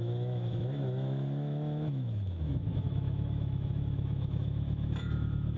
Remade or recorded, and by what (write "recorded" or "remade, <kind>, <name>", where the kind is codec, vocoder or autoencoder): remade, autoencoder, DAC-VAE